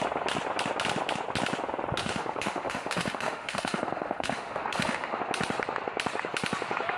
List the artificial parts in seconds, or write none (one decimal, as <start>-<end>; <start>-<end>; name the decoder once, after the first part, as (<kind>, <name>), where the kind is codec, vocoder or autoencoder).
2.0-5.2 (autoencoder, DAC-VAE)